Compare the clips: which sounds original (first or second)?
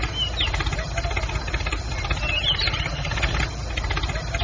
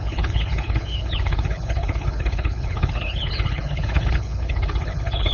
first